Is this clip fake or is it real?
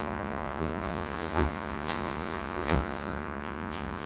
fake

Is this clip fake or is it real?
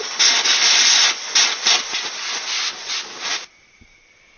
real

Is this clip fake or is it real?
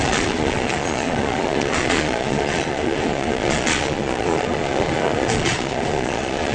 fake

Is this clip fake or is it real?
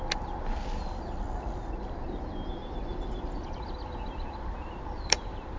real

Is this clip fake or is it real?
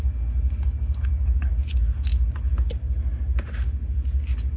real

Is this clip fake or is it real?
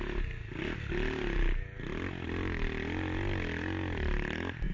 real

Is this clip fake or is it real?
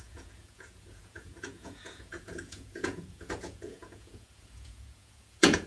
fake